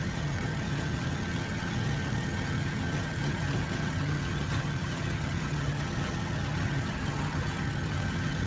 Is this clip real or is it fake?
fake